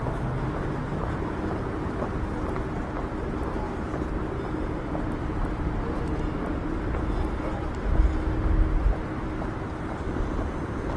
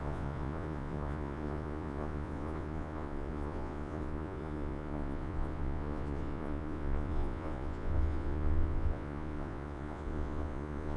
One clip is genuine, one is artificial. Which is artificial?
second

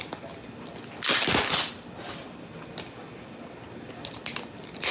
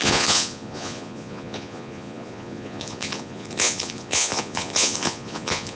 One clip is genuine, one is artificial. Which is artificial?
second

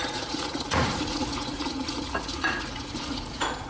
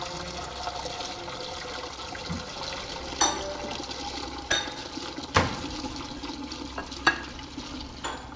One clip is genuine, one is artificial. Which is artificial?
first